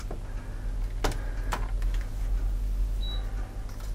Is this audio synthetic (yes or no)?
no